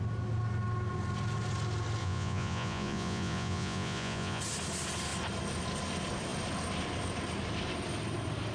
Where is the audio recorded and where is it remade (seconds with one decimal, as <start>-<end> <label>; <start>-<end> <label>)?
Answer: 0.0-2.0 recorded; 2.0-4.4 remade; 4.4-8.5 recorded